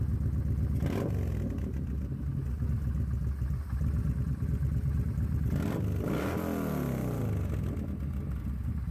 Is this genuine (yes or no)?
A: yes